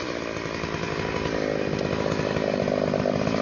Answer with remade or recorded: recorded